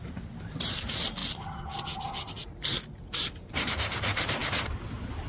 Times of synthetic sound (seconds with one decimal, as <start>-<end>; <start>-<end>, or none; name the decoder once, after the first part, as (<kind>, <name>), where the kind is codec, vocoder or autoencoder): none